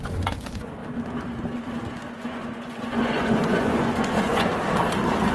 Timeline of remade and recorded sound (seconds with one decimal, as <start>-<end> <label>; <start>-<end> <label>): 0.0-0.8 remade; 0.8-2.1 recorded; 2.1-4.5 remade; 4.5-5.3 recorded